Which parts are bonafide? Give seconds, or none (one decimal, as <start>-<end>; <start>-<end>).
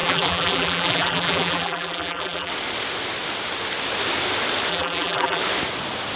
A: 2.5-4.7; 5.4-6.2